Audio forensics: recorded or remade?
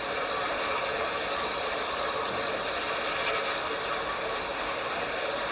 recorded